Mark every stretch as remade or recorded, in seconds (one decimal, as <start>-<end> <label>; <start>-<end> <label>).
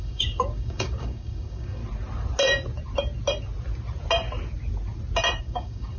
0.0-1.8 remade; 1.8-5.4 recorded; 5.4-6.0 remade